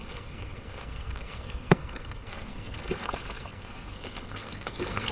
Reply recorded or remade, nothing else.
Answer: remade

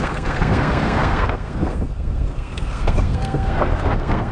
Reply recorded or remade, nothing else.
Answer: remade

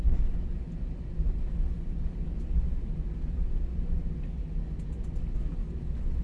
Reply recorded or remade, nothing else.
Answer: recorded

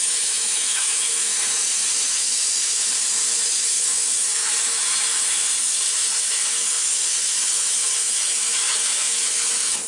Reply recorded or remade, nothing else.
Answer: remade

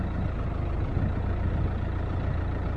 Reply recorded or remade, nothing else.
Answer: recorded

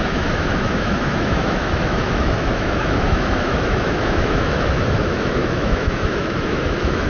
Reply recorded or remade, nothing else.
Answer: remade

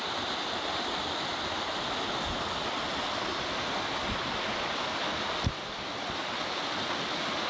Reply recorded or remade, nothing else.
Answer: recorded